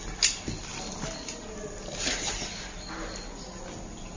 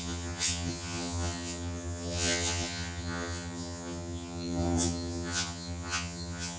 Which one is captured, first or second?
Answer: first